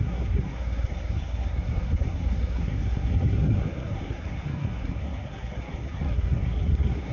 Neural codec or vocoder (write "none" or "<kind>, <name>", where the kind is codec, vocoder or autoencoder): codec, SNAC